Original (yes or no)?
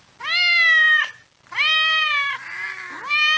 yes